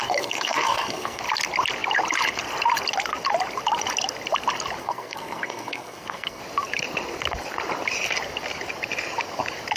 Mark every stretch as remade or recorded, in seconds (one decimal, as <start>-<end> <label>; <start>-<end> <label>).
0.0-1.2 remade; 1.2-4.8 recorded; 4.8-6.4 remade; 6.4-9.8 recorded